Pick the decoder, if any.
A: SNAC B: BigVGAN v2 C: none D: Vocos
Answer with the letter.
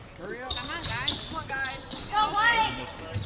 C